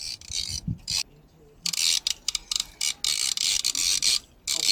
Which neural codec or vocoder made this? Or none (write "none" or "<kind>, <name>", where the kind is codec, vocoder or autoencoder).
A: none